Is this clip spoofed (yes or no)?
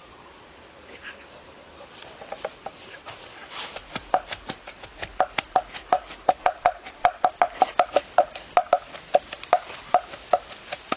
no